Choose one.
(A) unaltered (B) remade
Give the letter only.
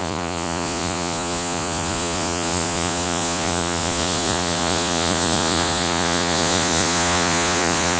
B